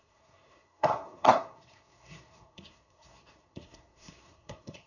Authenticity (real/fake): fake